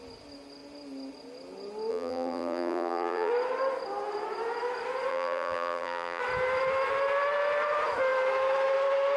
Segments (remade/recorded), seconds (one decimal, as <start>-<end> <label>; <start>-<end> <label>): 0.0-1.9 recorded; 1.9-3.3 remade; 3.3-5.1 recorded; 5.1-6.2 remade; 6.2-9.2 recorded